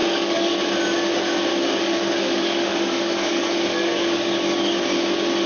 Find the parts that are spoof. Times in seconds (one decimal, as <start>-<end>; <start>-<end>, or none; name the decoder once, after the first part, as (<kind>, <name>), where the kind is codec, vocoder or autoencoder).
0.0-0.6 (codec, DAC); 1.5-4.8